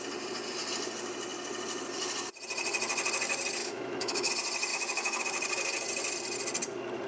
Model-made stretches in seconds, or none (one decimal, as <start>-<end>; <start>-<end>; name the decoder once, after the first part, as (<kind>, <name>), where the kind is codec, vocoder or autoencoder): 3.6-4.3 (autoencoder, DAC-VAE); 4.7-5.2